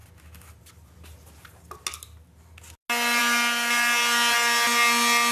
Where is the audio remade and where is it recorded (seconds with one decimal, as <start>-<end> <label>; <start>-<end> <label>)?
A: 0.0-5.3 recorded